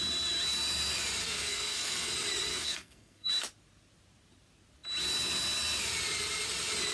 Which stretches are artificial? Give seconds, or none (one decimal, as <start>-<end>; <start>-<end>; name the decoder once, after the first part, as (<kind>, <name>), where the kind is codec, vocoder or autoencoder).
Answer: 1.2-2.1 (codec, SNAC); 2.5-3.3